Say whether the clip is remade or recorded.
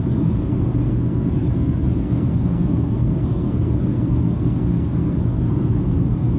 remade